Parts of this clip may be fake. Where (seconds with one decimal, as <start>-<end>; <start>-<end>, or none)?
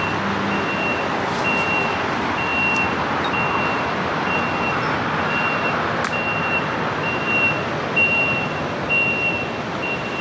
none